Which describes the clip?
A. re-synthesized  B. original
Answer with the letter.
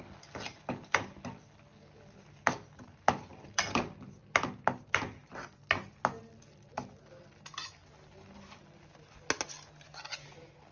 B